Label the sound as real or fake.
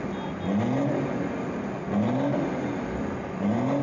real